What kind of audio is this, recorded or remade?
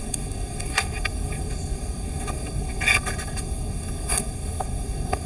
remade